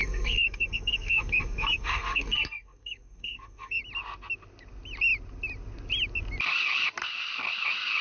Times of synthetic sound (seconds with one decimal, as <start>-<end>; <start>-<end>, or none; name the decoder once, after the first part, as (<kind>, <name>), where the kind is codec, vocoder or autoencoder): 0.0-3.8 (codec, SNAC)